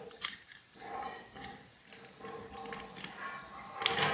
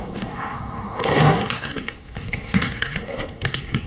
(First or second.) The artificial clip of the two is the second